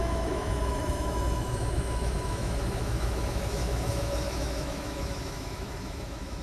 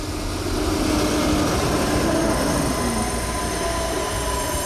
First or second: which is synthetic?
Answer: first